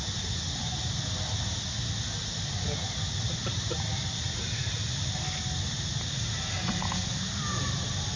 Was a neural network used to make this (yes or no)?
no